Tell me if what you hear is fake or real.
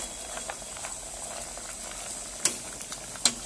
real